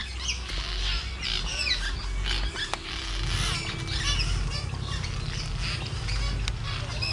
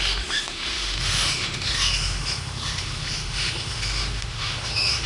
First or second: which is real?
first